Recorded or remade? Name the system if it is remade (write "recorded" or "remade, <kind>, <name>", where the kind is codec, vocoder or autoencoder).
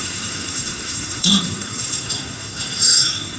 remade, codec, SNAC